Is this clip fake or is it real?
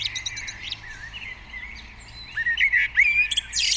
fake